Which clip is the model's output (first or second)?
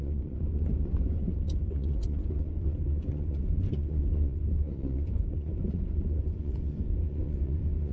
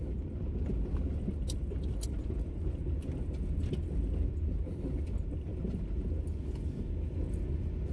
first